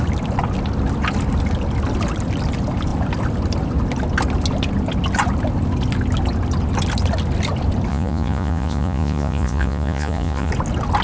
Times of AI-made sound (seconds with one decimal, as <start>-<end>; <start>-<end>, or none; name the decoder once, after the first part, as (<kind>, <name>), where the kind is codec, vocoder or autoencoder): 7.9-10.5 (vocoder, Vocos)